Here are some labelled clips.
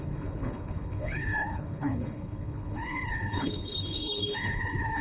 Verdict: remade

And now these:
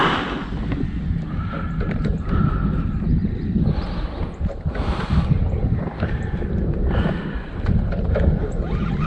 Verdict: recorded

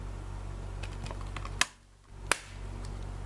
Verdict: recorded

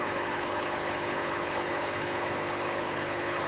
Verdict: remade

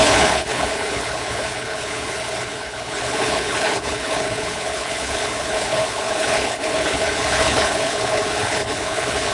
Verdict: remade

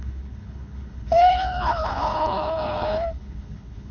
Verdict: remade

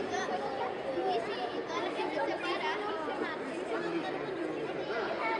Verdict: recorded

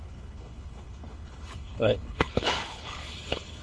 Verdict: remade